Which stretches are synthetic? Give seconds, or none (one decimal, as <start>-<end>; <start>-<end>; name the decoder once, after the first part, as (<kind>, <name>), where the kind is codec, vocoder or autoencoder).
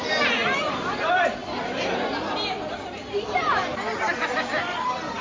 0.0-1.4 (vocoder, BigVGAN v2); 2.7-3.7; 4.4-5.2